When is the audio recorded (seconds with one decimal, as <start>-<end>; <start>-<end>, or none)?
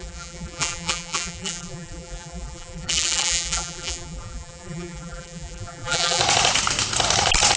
6.2-7.6